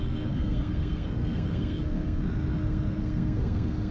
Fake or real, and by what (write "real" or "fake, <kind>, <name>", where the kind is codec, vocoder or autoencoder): fake, codec, SNAC